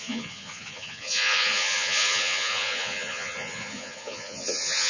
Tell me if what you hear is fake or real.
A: fake